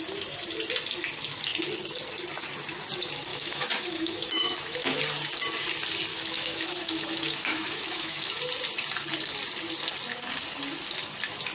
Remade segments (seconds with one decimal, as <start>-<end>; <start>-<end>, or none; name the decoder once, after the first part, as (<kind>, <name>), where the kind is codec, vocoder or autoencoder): 3.3-5.0 (autoencoder, DAC-VAE); 6.1-8.4